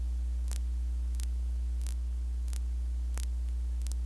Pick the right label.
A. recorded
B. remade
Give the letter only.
A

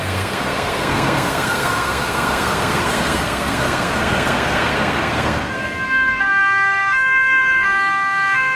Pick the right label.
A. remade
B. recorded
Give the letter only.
A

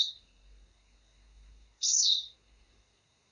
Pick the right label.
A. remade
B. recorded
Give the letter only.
A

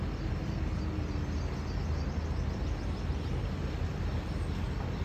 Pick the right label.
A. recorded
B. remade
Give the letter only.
A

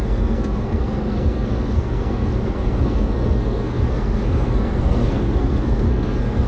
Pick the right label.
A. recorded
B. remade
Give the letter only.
B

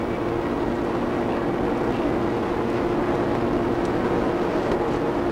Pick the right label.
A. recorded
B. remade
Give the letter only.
A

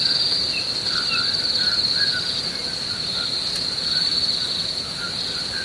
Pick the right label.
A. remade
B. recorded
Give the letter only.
B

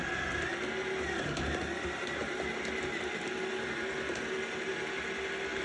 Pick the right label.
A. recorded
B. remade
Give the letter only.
A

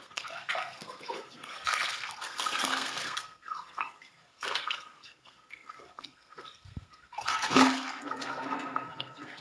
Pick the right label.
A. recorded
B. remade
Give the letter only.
B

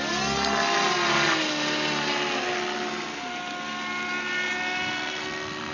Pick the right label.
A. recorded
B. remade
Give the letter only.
A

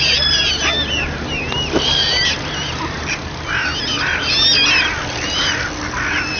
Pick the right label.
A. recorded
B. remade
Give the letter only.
A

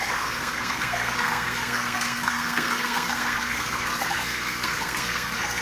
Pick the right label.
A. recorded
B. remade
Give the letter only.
B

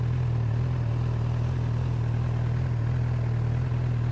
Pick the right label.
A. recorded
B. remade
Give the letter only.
A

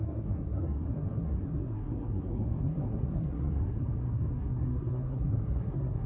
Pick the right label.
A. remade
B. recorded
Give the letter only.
A